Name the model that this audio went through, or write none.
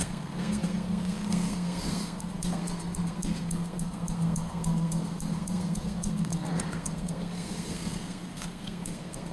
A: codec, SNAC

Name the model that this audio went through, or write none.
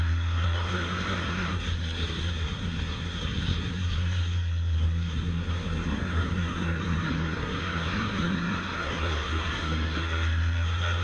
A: codec, SNAC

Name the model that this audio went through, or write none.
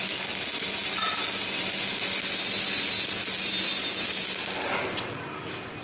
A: none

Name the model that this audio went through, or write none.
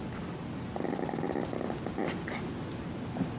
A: none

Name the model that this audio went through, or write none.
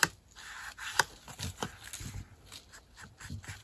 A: none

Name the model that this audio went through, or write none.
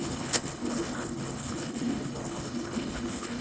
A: codec, HILCodec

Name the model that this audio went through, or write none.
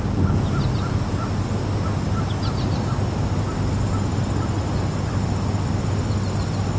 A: none